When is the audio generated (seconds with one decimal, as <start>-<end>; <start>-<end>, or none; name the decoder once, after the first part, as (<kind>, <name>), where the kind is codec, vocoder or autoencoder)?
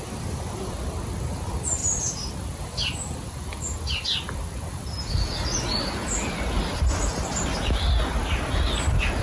none